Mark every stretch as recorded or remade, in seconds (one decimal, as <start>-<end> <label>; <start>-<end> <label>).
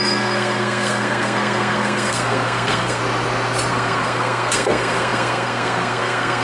0.0-3.0 remade; 3.0-3.7 recorded; 3.7-6.4 remade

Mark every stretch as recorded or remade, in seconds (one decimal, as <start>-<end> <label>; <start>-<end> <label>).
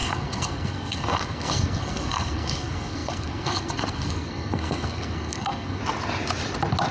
0.0-5.8 remade; 5.8-6.9 recorded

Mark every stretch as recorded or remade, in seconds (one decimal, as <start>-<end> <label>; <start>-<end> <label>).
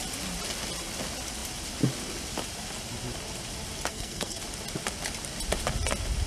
0.0-3.9 recorded; 3.9-4.4 remade; 4.4-6.3 recorded